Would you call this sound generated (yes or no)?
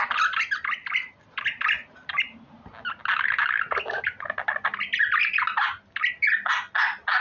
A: no